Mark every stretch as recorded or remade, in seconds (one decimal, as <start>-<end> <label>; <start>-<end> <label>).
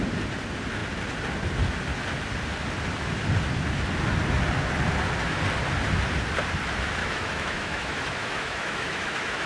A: 0.0-7.0 recorded; 7.0-9.5 remade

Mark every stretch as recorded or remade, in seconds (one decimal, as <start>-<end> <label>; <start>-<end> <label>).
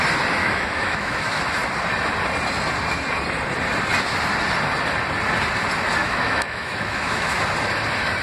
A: 0.0-0.4 recorded; 0.4-1.4 remade; 1.4-6.0 recorded; 6.0-7.4 remade; 7.4-8.2 recorded